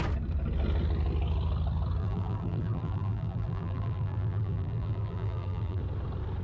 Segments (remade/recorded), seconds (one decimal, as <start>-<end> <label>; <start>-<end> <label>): 0.0-2.0 recorded; 2.0-5.8 remade; 5.8-6.4 recorded